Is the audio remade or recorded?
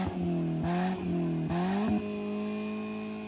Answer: recorded